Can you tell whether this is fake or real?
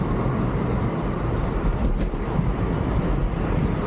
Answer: real